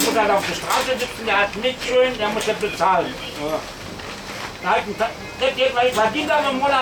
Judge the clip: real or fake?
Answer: real